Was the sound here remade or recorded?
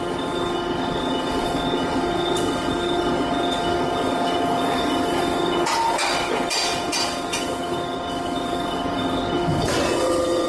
recorded